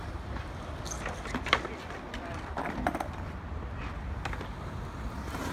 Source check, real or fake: real